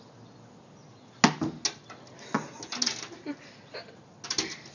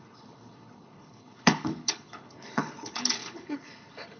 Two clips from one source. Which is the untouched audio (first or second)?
first